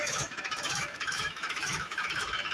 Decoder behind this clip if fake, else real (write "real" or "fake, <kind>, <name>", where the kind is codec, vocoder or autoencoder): fake, autoencoder, DAC-VAE